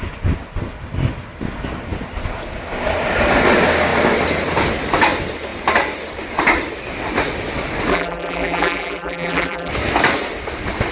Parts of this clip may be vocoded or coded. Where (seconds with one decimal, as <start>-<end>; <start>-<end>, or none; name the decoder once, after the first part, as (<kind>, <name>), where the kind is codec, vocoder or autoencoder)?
7.9-9.7 (vocoder, BigVGAN v2)